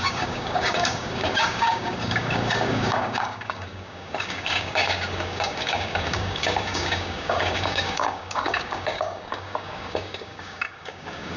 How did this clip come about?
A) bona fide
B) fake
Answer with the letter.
B